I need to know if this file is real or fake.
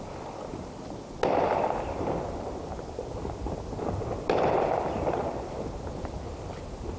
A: real